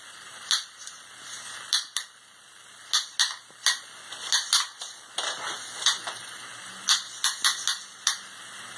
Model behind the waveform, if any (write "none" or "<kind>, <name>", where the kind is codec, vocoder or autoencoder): none